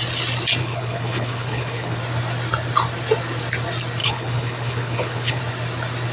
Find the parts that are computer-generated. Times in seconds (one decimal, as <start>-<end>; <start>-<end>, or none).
0.6-2.0; 4.0-5.4